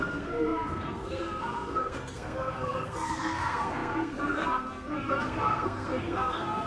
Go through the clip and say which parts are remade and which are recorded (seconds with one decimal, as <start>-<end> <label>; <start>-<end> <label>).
0.0-6.7 remade